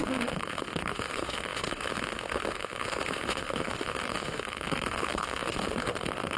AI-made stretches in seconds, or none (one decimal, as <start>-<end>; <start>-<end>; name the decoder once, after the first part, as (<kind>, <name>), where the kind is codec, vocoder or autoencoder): 0.0-6.4 (autoencoder, DAC-VAE)